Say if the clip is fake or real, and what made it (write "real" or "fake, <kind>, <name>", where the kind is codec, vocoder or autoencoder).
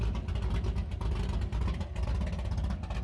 real